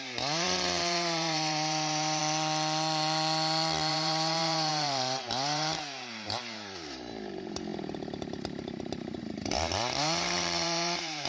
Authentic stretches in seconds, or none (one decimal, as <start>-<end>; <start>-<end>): 2.2-3.9